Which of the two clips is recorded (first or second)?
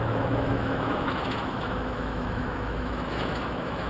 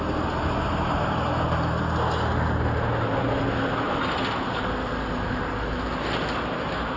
second